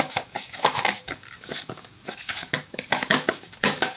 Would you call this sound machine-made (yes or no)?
yes